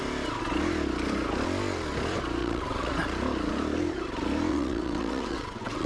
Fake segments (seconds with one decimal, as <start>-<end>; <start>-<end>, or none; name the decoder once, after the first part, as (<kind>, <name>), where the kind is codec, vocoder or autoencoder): 2.4-2.9 (vocoder, WaveNeXt); 4.5-5.9